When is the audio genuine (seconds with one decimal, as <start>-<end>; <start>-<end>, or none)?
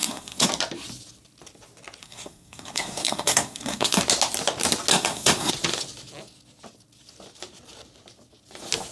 0.5-2.0; 4.0-4.9; 5.5-8.9